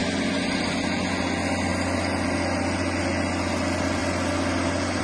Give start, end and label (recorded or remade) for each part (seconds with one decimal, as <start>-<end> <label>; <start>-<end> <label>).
0.0-5.0 recorded